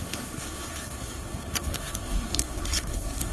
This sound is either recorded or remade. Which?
remade